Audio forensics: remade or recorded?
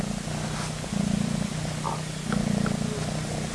recorded